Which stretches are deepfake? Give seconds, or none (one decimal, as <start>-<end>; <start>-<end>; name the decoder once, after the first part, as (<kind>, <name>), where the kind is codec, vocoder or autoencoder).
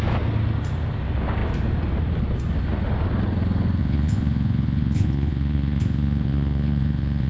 3.8-7.3 (vocoder, Vocos)